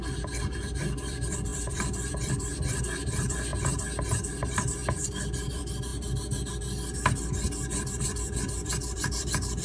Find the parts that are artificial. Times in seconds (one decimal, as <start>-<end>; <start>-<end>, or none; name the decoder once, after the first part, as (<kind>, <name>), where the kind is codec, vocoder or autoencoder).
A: 0.0-3.5 (vocoder, BigVGAN v2); 4.3-4.8; 5.5-5.9; 7.9-9.6